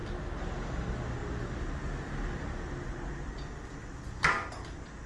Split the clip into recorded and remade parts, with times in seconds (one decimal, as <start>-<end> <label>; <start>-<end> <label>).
0.0-5.1 recorded